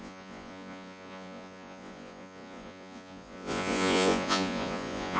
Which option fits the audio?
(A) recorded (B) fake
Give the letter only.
B